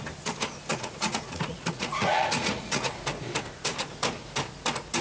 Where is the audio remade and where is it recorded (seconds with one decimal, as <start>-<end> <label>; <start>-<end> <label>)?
0.0-0.7 recorded; 0.7-2.9 remade; 2.9-5.0 recorded